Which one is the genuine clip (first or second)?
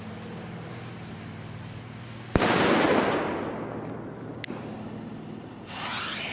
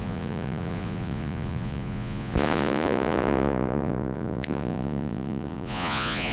first